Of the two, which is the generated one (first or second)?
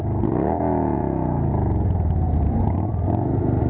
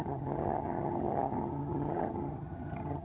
second